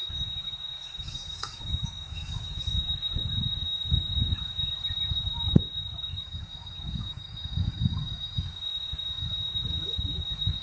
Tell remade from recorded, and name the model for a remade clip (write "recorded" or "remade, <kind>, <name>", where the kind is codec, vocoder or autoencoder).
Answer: remade, codec, DAC